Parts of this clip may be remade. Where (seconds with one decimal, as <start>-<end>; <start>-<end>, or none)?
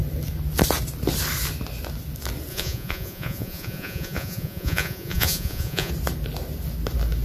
2.5-5.9